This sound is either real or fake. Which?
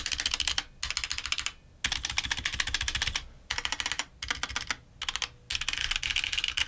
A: real